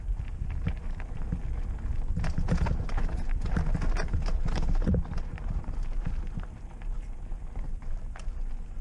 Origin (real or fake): real